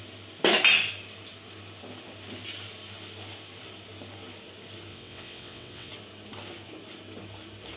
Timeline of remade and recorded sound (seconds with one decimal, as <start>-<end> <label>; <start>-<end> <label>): 0.0-4.9 recorded; 4.9-5.9 remade; 5.9-7.8 recorded